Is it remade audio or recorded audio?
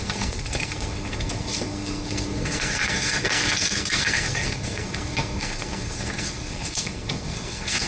remade